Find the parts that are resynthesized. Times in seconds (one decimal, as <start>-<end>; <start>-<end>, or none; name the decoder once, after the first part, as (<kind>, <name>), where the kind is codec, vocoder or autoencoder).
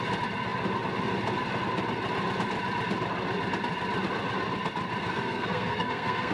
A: 5.0-6.3 (codec, SNAC)